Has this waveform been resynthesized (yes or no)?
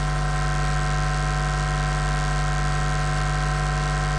no